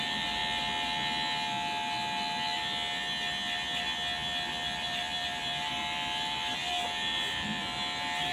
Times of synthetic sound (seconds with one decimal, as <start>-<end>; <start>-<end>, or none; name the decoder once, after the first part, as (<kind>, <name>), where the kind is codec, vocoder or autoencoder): 0.0-0.4 (vocoder, BigVGAN v2); 4.5-8.3

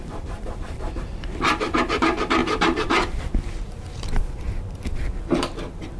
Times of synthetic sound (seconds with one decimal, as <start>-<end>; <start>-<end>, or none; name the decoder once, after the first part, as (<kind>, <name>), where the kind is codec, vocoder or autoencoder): 0.0-6.0 (vocoder, BigVGAN v2)

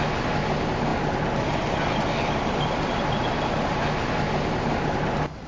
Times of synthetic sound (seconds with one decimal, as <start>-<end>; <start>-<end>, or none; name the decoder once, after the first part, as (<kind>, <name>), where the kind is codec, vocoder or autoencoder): none

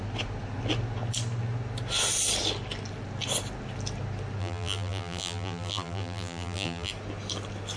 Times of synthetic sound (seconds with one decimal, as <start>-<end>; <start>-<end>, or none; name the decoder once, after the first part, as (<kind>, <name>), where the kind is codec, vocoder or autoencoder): 4.4-6.9 (vocoder, BigVGAN v2)